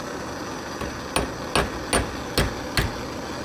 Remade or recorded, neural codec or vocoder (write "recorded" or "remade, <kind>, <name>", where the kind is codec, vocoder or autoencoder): recorded